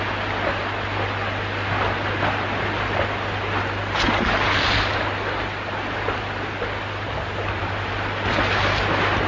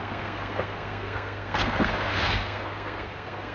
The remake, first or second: second